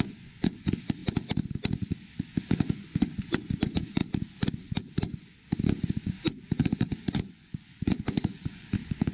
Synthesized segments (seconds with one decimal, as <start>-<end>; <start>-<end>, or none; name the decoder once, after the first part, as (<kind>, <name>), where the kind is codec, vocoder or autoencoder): 0.0-1.0 (vocoder, Vocos); 2.2-4.0; 4.6-9.1